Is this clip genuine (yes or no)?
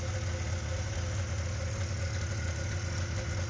yes